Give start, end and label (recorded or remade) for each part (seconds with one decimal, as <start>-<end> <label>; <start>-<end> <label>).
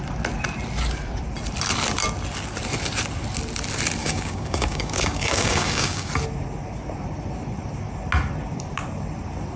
0.0-4.0 recorded; 4.0-6.1 remade; 6.1-9.6 recorded